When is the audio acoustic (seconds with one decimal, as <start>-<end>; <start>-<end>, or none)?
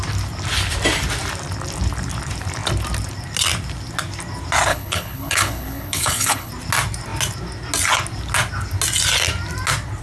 0.0-4.7; 6.5-10.0